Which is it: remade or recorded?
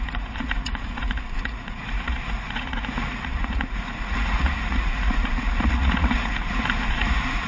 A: remade